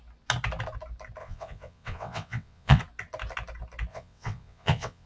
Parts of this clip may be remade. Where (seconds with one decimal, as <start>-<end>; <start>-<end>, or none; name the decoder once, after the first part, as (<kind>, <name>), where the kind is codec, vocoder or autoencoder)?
1.2-2.8 (vocoder, WaveNeXt); 3.9-5.1